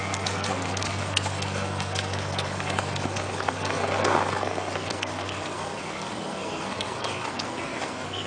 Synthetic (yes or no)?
yes